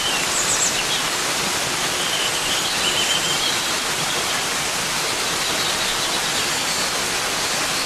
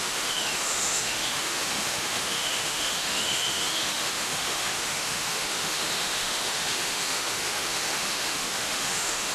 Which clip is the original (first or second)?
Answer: first